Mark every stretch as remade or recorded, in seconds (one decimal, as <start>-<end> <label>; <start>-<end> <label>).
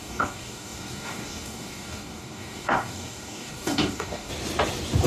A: 0.0-4.3 remade; 4.3-5.1 recorded